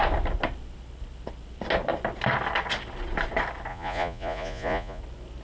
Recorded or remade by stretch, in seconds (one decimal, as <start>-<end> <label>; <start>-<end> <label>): 0.0-3.7 recorded; 3.7-5.0 remade; 5.0-5.4 recorded